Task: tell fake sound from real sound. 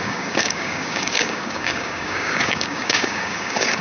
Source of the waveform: fake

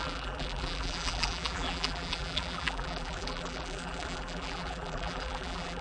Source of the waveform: fake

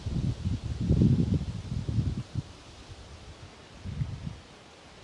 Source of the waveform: real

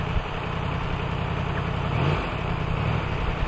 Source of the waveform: real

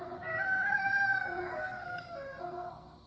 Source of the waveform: fake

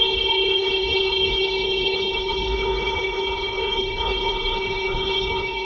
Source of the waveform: fake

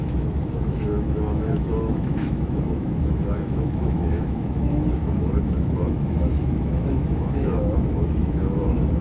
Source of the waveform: fake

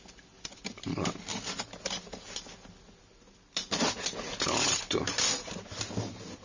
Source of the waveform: real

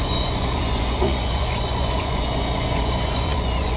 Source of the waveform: fake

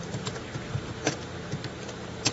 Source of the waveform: fake